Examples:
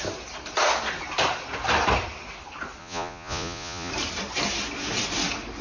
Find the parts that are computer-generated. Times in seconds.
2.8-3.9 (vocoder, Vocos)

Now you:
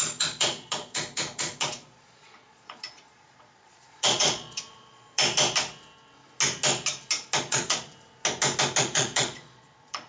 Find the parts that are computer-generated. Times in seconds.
0.0-5.2 (vocoder, Vocos); 7.4-7.9; 8.8-10.1